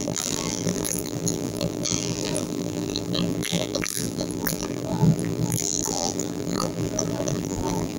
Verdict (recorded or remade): remade